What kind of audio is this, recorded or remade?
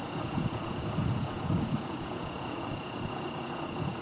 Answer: remade